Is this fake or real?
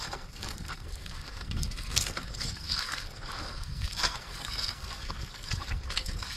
fake